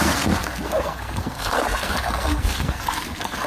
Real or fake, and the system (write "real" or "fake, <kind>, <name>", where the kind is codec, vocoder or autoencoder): fake, codec, SNAC